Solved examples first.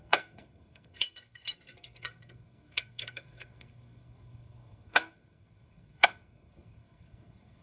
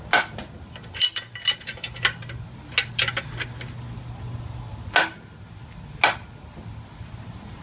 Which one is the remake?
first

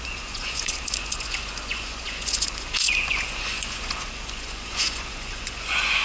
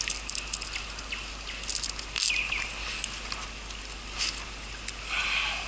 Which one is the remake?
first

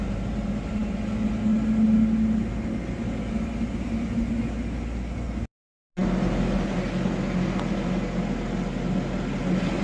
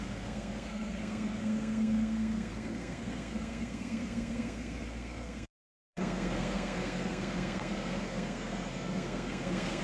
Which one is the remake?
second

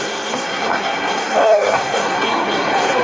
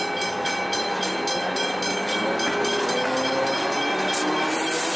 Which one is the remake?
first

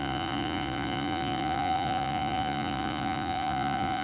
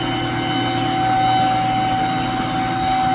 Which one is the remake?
first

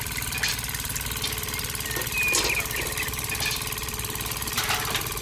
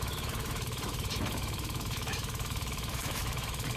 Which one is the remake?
second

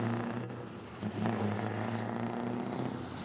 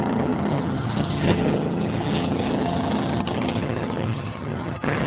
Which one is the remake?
second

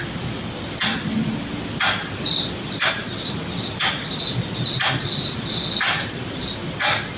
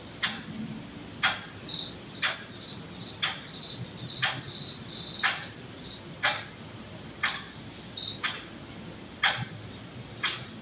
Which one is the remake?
first